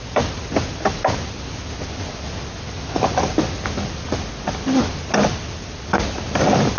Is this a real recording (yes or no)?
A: yes